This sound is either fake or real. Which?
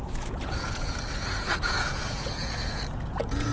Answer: fake